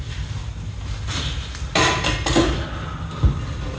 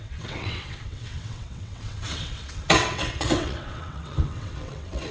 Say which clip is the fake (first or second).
second